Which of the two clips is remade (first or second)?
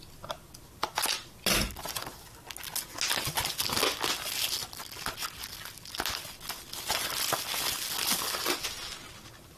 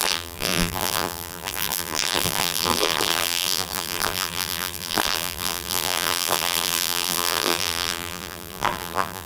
second